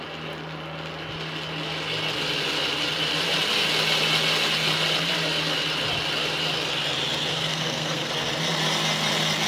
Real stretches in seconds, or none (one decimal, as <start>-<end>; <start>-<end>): 0.0-7.3; 8.1-9.5